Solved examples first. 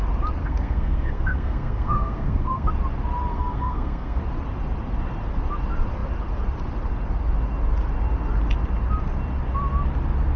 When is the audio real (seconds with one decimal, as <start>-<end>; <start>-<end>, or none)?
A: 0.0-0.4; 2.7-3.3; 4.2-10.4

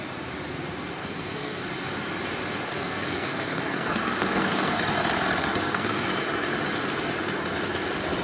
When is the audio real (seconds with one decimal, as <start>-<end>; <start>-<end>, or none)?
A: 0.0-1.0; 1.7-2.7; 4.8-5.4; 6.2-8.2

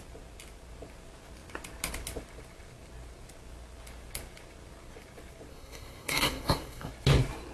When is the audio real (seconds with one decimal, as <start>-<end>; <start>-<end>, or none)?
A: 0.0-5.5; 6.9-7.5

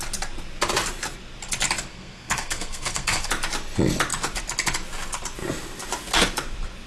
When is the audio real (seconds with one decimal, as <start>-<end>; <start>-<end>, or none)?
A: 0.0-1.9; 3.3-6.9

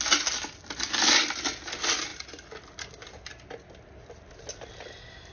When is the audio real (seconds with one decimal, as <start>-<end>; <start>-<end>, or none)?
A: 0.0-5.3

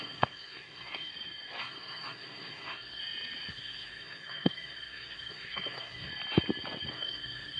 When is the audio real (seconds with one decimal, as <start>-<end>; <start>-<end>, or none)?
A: 1.1-1.6; 3.0-3.5; 6.1-6.9

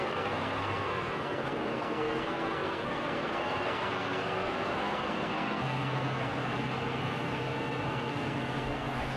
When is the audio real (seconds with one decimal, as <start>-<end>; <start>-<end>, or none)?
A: none

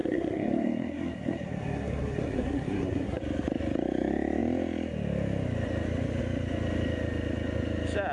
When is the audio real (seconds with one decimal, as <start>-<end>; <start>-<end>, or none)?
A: 3.2-8.1